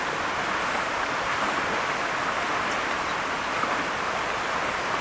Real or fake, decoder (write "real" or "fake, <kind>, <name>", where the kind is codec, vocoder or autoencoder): real